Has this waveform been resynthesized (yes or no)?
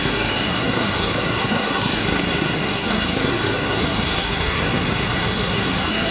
yes